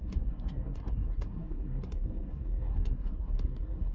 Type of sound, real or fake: fake